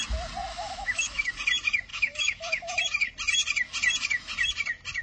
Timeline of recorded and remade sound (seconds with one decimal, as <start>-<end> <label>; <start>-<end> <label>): 0.0-0.5 recorded; 0.5-1.3 remade; 1.3-1.9 recorded; 1.9-2.8 remade; 2.8-5.0 recorded